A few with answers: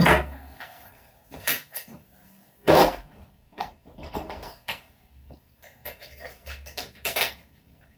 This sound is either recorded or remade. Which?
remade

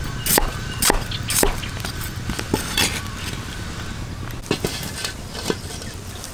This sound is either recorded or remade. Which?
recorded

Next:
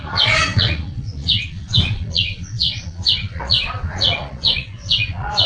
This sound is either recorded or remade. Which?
remade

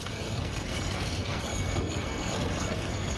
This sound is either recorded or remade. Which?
remade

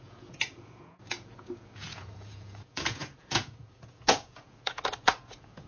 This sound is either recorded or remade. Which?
remade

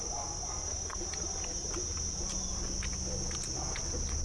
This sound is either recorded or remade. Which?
recorded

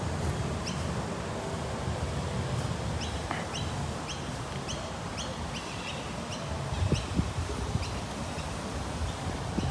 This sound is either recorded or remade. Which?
recorded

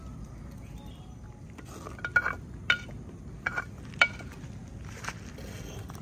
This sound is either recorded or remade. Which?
recorded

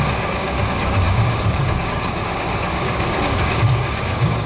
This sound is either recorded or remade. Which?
remade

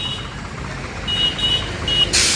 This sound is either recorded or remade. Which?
recorded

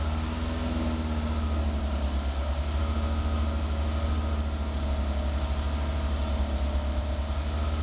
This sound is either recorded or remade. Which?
recorded